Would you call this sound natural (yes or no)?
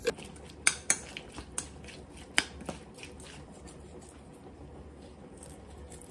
yes